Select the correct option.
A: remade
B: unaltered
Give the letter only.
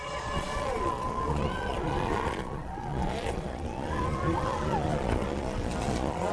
A